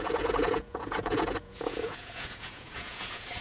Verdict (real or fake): fake